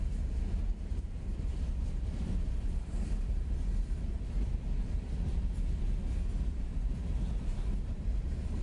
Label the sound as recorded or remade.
recorded